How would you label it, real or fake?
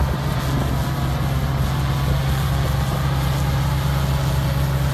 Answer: real